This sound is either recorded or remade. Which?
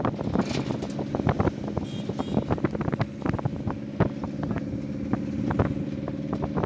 recorded